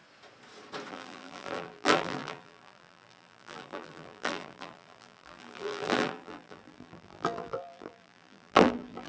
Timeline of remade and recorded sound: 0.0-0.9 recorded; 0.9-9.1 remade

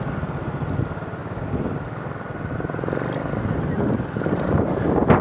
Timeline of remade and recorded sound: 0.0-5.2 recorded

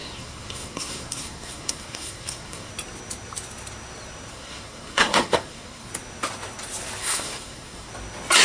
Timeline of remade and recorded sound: 0.0-2.7 remade; 2.7-4.3 recorded; 4.3-5.9 remade; 5.9-7.0 recorded; 7.0-7.9 remade; 7.9-8.4 recorded

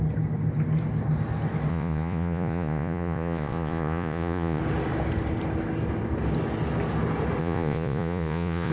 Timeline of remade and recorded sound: 0.0-1.7 recorded; 1.7-4.6 remade; 4.6-7.4 recorded; 7.4-8.7 remade

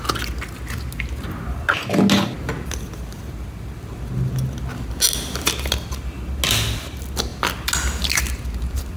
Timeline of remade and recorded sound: 0.0-9.0 recorded

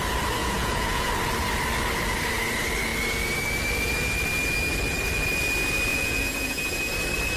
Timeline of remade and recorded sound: 0.0-0.4 recorded; 0.4-1.1 remade; 1.1-5.9 recorded; 5.9-6.9 remade; 6.9-7.4 recorded